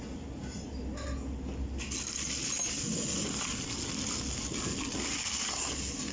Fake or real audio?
real